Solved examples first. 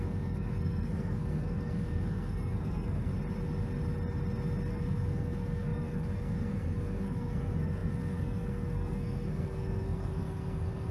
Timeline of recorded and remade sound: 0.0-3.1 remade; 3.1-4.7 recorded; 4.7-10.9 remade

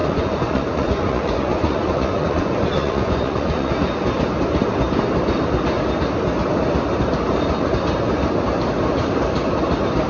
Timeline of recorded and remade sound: 0.0-3.7 remade; 3.7-10.1 recorded